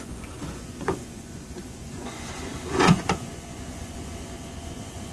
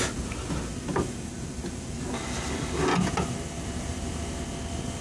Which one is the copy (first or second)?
first